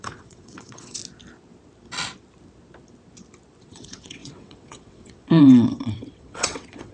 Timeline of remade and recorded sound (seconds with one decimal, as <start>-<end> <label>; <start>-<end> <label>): 0.0-1.0 remade; 1.0-3.6 recorded; 3.6-6.9 remade